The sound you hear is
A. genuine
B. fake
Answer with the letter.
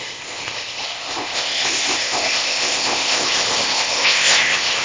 B